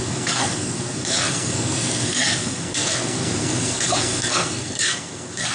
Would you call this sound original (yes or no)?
no